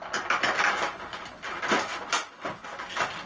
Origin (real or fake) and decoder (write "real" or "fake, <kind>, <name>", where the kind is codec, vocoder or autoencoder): real